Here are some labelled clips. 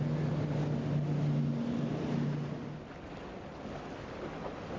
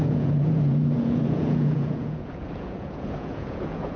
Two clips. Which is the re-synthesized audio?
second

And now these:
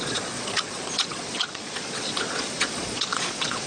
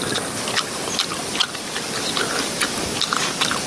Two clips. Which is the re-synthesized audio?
first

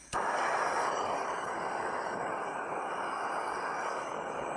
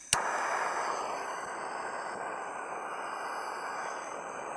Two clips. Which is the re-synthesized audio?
first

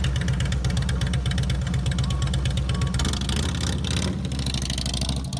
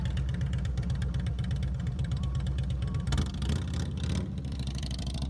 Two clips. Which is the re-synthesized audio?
second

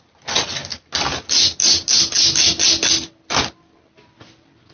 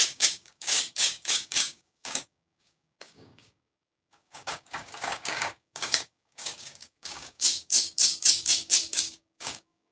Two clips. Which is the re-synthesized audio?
second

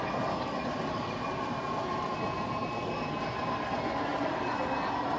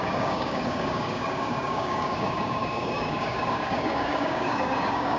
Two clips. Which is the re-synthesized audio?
second